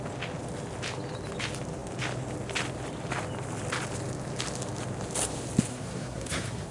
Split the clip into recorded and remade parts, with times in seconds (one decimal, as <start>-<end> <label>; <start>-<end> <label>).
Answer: 0.0-5.7 recorded; 5.7-6.7 remade